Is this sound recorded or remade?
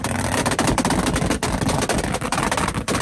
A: recorded